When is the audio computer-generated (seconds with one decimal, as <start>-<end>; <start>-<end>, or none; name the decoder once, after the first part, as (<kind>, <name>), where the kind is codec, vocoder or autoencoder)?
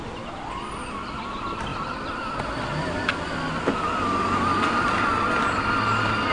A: none